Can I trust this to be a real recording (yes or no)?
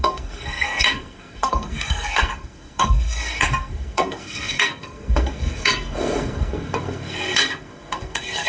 no